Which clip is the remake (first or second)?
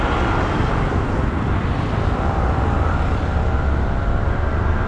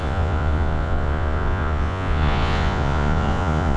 second